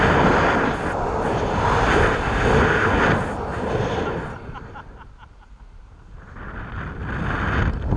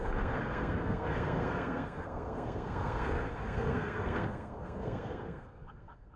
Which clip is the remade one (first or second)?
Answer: second